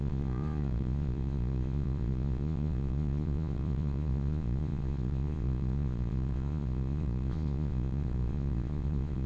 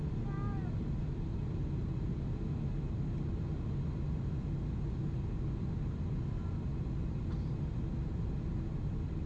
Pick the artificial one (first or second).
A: first